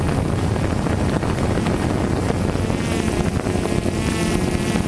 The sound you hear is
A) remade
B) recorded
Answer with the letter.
B